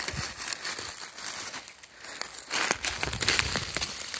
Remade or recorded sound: recorded